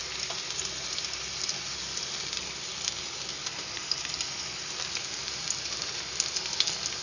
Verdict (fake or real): real